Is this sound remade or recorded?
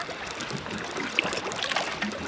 recorded